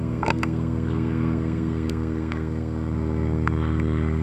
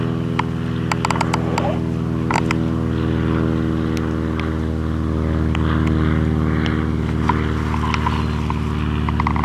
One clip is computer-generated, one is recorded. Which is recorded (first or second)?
second